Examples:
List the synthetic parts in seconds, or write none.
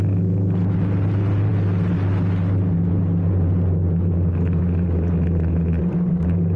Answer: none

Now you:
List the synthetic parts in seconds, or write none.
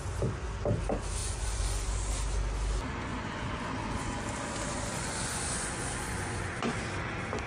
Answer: 1.2-2.1; 3.1-4.2; 4.7-6.6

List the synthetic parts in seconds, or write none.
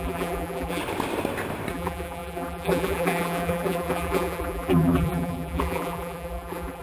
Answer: 0.0-0.8; 1.7-6.8